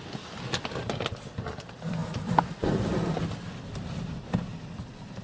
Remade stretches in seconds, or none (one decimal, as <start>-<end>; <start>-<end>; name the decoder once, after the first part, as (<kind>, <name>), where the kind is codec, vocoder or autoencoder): none